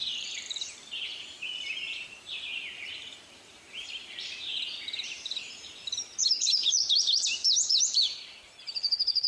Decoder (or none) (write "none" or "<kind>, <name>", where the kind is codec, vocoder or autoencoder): vocoder, BigVGAN v2